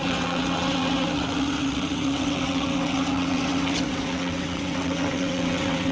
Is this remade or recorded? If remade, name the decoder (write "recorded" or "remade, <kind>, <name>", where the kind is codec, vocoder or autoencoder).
remade, vocoder, WaveNeXt